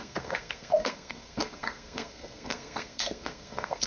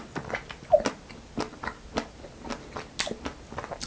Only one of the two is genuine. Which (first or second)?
second